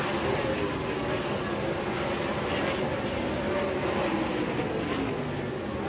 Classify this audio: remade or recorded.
recorded